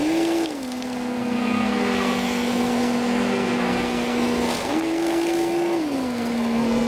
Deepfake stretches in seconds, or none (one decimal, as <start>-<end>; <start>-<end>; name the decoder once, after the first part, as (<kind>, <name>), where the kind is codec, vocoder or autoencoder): 0.0-6.9 (codec, SNAC)